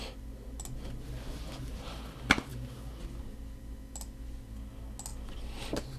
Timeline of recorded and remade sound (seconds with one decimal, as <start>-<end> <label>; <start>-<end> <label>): 0.0-6.0 recorded